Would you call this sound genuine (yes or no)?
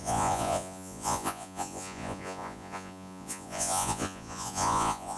no